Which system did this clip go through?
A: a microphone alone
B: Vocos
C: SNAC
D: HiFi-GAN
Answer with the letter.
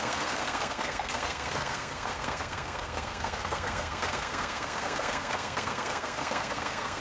C